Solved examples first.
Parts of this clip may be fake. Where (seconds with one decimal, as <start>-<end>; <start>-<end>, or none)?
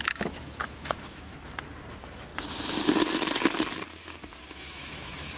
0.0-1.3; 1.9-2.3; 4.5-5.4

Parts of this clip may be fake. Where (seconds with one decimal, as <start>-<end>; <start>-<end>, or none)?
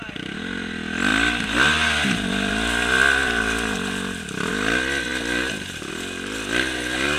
none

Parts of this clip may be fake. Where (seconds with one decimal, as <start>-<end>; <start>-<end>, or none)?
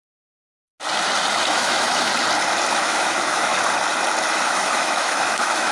0.0-0.7; 1.3-2.1; 2.7-3.5; 4.3-5.7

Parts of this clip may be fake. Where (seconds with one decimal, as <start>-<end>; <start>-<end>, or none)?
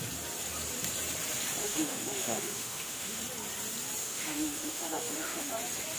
1.6-3.2; 4.0-5.5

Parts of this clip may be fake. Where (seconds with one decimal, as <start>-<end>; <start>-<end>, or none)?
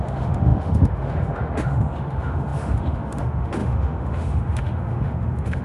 0.0-5.6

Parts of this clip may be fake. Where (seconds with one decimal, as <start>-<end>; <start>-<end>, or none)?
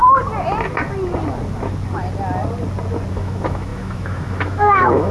3.1-5.1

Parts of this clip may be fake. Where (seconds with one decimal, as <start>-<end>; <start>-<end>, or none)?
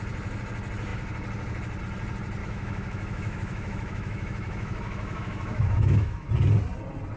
2.4-6.3